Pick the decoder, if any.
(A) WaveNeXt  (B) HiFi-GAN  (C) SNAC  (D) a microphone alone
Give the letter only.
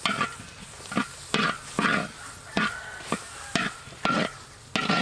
D